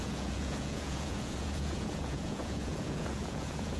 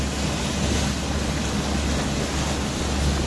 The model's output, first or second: first